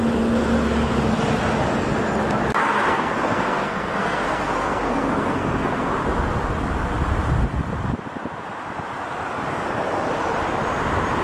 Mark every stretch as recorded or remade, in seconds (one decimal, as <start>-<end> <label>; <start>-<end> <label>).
0.0-2.6 recorded; 2.6-5.9 remade; 5.9-11.2 recorded